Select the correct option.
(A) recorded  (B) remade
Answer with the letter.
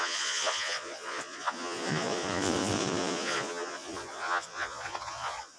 B